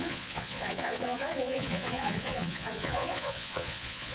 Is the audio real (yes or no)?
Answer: no